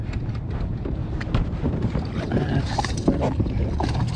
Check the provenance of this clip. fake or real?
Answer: fake